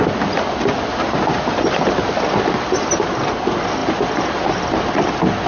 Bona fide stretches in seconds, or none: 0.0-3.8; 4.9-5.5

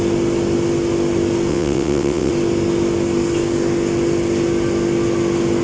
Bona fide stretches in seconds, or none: 0.0-1.5; 2.3-5.6

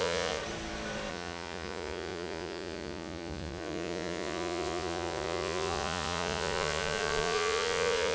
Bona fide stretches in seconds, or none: 0.4-1.1

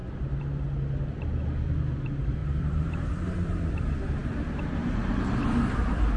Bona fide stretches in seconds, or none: 0.0-2.4; 3.8-6.2

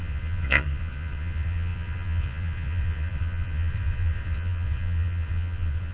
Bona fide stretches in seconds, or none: none

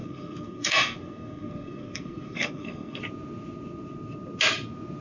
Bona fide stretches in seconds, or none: 3.0-5.0

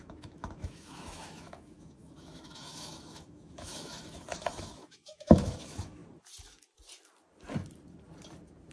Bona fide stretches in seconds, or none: 6.0-8.7